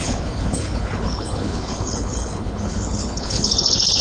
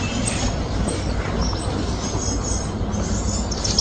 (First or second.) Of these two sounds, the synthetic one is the first